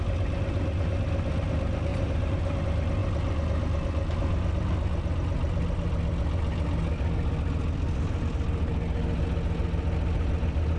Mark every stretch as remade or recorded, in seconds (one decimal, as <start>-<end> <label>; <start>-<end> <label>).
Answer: 0.0-1.9 recorded; 1.9-2.6 remade; 2.6-10.8 recorded